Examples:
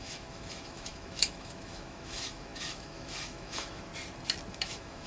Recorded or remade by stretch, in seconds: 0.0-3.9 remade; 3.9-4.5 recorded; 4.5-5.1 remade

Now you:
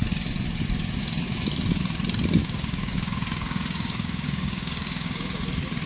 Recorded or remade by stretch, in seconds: 0.0-2.4 recorded; 2.4-5.4 remade; 5.4-5.9 recorded

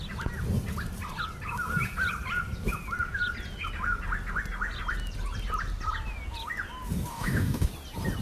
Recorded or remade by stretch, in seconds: 0.0-7.1 recorded; 7.1-7.7 remade; 7.7-8.2 recorded

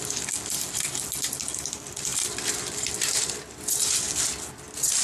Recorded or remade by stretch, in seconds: 0.0-5.0 recorded

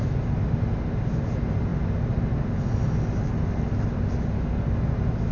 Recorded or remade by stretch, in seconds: 0.0-5.3 recorded

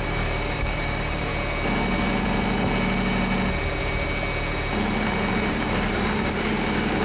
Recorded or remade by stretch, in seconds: 0.0-1.3 remade; 1.3-5.5 recorded; 5.5-7.0 remade

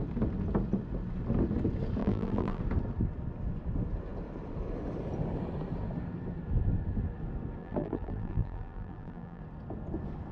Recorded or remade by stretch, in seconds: 0.0-2.0 recorded; 2.0-2.6 remade; 2.6-7.6 recorded; 7.6-9.4 remade; 9.4-10.3 recorded